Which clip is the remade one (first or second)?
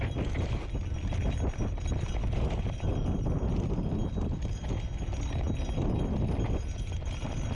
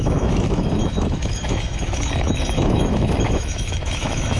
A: second